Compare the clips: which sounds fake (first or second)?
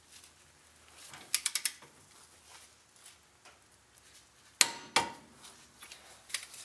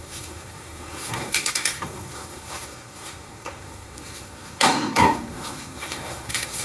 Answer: second